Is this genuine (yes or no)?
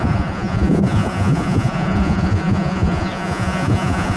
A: no